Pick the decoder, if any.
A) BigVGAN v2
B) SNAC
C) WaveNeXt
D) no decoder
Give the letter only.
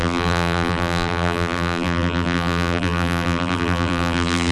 A